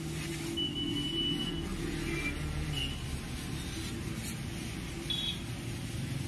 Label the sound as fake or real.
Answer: real